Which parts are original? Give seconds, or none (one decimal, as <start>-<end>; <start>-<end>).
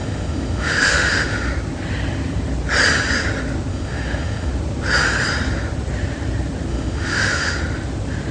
1.5-3.7; 4.5-6.7; 7.6-8.3